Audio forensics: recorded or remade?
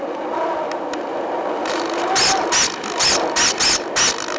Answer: recorded